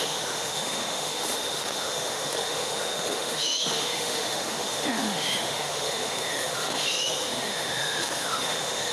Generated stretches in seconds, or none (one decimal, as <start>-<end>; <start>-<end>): 0.0-8.9